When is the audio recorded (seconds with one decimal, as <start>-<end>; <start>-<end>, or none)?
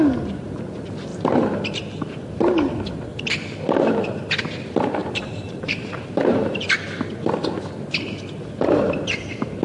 0.0-1.1; 1.8-5.0; 6.6-9.6